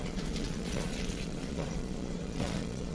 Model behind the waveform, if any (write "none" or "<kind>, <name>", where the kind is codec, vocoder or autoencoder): vocoder, Vocos